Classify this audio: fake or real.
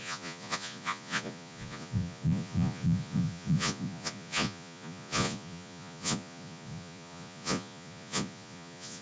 fake